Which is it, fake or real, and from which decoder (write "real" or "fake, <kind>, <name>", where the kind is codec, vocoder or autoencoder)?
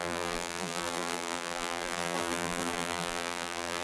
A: fake, vocoder, BigVGAN v2